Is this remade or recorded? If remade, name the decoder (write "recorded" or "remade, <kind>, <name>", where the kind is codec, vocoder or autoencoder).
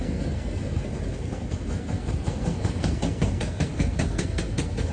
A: remade, codec, SNAC